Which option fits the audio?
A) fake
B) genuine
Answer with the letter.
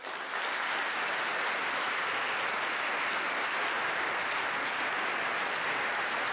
B